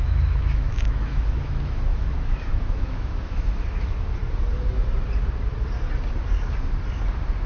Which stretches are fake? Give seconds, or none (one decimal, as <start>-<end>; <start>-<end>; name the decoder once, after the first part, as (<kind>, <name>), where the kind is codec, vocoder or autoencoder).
0.0-4.2 (autoencoder, DAC-VAE)